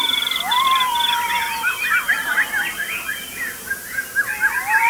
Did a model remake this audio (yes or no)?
no